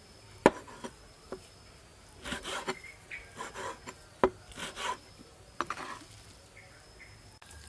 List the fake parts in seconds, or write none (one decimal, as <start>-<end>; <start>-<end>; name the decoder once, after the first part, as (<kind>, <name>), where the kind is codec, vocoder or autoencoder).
none